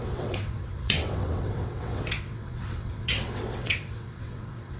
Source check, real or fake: fake